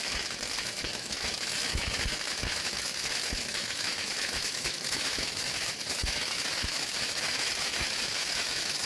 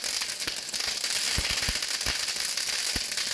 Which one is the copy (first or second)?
first